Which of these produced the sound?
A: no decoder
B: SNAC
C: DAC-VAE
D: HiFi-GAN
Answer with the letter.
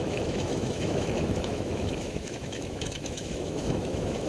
C